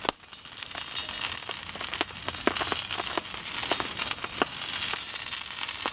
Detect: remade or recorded recorded